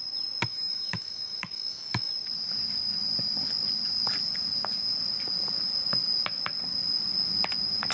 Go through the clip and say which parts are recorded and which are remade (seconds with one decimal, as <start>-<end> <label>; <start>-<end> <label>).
0.0-0.5 recorded; 0.5-2.1 remade; 2.1-7.9 recorded